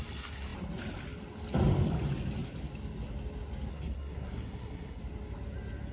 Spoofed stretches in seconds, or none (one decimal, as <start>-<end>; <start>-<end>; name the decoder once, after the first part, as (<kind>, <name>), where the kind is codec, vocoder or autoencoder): 3.7-5.0 (codec, SNAC)